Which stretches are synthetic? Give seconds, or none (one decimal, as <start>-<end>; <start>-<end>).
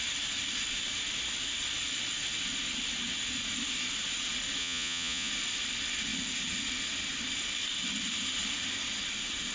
4.6-5.3